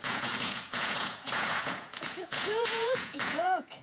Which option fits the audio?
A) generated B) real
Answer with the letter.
A